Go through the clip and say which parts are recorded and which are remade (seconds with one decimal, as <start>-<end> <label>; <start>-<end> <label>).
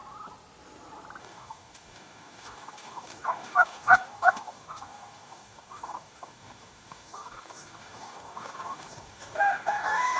0.0-1.2 recorded; 1.2-10.2 remade